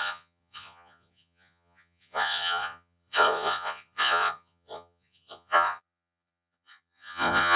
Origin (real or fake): fake